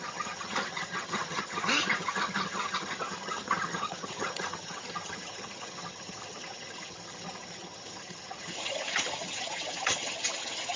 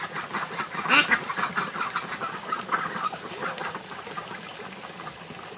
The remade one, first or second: first